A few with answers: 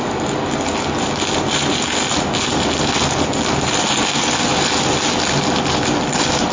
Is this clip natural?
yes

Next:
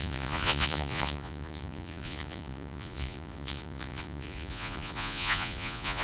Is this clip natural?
no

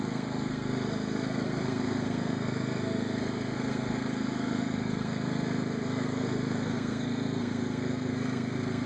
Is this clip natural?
no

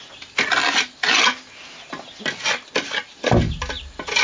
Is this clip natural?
yes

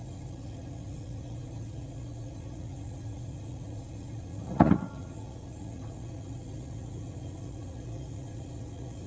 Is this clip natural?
no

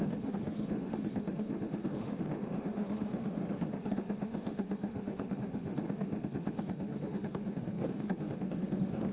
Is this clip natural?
no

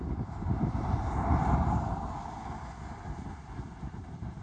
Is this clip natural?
yes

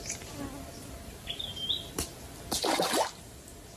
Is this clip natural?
yes